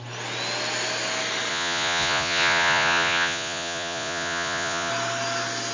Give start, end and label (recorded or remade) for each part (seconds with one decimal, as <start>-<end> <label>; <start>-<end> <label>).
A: 0.0-1.5 recorded; 1.5-4.9 remade; 4.9-5.7 recorded